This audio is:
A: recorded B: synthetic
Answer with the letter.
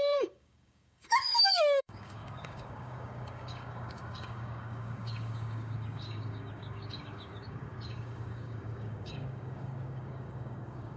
B